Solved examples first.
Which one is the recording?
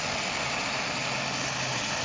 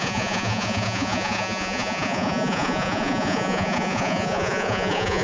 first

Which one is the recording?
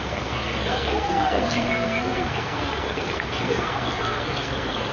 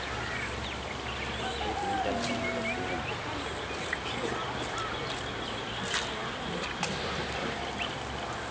second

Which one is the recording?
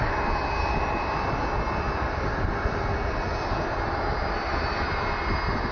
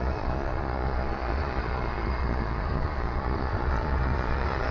first